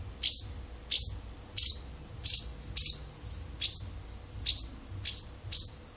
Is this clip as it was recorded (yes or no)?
yes